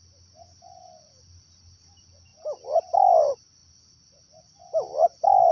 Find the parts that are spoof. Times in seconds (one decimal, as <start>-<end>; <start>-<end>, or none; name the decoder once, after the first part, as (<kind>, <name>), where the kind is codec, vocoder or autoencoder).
none